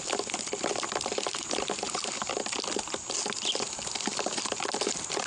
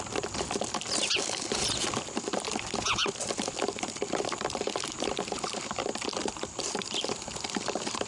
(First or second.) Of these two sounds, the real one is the first